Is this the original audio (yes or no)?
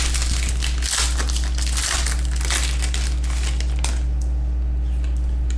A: yes